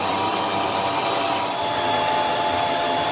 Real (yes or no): no